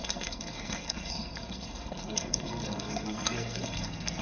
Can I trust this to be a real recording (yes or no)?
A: no